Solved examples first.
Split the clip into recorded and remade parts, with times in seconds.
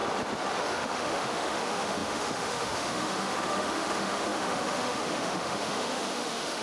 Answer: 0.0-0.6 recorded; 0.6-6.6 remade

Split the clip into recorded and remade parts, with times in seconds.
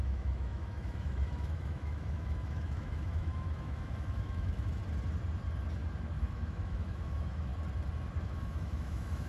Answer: 0.0-4.8 remade; 4.8-6.2 recorded; 6.2-7.5 remade; 7.5-8.2 recorded; 8.2-9.3 remade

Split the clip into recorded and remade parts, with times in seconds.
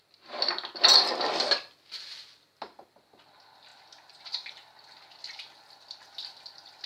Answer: 0.0-6.9 recorded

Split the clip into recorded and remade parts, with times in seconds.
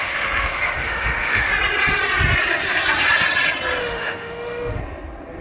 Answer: 0.0-1.5 remade; 1.5-3.8 recorded; 3.8-4.8 remade; 4.8-5.4 recorded